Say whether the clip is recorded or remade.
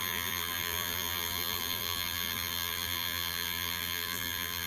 remade